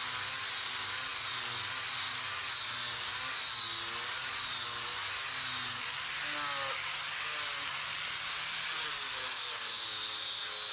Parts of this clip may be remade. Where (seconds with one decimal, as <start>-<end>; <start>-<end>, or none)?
none